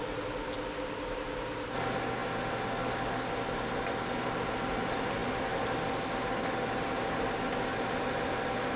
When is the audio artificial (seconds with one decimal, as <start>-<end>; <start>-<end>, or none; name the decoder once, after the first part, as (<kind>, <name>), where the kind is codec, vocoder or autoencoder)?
none